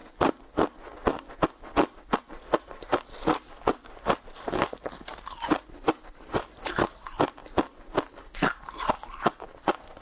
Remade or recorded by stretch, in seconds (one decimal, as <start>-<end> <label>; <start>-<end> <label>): 0.0-10.0 recorded